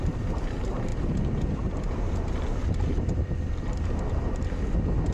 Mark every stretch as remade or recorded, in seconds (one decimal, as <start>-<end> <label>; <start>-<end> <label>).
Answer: 0.0-5.1 recorded